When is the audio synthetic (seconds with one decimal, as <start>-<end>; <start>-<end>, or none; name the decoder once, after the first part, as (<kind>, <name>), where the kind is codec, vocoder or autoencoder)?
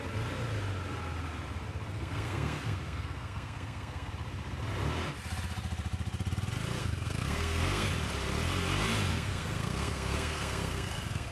1.9-4.1 (codec, SNAC); 6.8-7.9; 9.1-11.3